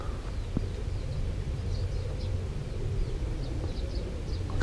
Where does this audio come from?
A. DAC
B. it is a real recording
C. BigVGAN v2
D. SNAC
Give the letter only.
B